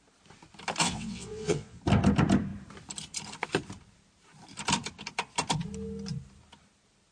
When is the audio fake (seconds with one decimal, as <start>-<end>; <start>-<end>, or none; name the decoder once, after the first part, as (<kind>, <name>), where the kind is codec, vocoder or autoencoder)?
0.8-1.8 (vocoder, WaveNeXt)